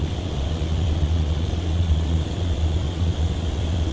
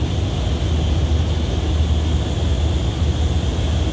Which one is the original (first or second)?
second